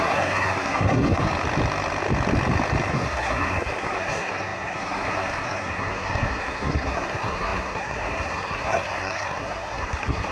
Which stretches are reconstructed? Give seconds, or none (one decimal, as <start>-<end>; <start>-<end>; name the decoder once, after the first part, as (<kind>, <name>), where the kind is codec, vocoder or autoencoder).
0.0-1.3 (codec, SNAC); 2.9-10.3